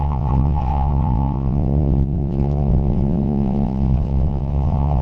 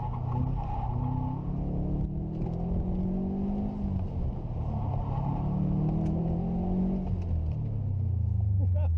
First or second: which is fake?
first